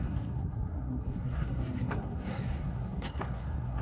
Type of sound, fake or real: fake